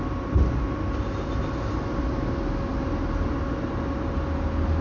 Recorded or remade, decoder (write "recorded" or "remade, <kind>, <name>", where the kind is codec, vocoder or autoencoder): recorded